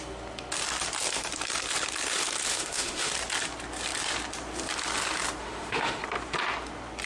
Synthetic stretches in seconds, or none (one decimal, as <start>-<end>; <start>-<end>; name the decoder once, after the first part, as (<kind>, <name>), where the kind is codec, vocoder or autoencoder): 2.5-3.1 (autoencoder, DAC-VAE); 5.4-6.0